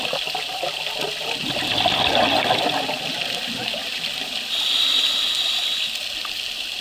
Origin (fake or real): real